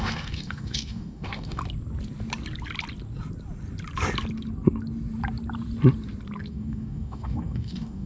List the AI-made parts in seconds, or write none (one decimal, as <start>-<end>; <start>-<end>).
0.0-1.6; 6.5-8.1